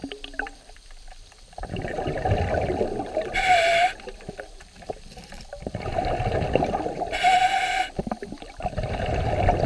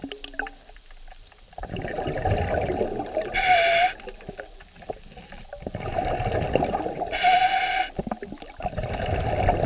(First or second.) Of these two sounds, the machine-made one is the first